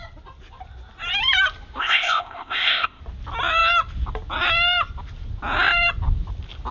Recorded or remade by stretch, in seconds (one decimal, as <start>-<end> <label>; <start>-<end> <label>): 0.0-1.8 recorded; 1.8-3.0 remade; 3.0-6.7 recorded